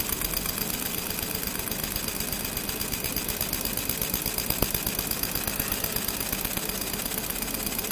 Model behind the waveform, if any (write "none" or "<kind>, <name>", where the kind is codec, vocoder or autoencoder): none